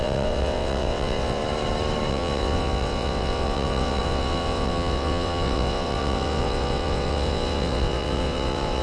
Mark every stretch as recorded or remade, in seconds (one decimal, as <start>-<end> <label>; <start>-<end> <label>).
0.0-1.4 remade; 1.4-2.1 recorded; 2.1-8.8 remade